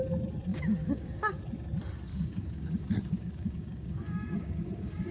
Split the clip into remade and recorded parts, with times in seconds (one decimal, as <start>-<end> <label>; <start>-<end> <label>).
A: 0.0-0.5 recorded; 0.5-1.4 remade; 1.4-2.1 recorded; 2.1-5.1 remade